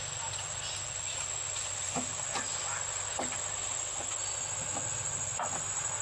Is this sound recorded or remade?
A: recorded